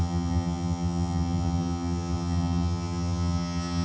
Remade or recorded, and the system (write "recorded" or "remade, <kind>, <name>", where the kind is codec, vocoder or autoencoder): remade, vocoder, HiFi-GAN